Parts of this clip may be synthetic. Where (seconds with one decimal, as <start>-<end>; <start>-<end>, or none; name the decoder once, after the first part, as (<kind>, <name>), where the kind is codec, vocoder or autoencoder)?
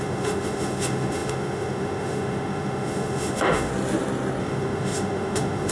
0.0-3.7 (autoencoder, DAC-VAE); 4.4-5.7